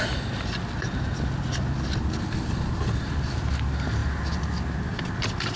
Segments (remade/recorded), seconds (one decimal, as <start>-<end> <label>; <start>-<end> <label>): 0.0-5.6 recorded